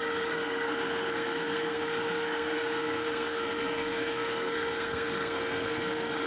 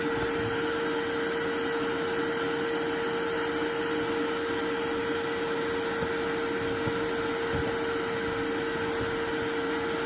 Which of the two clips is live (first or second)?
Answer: second